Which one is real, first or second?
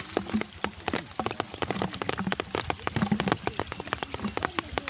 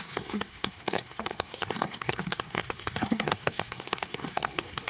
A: first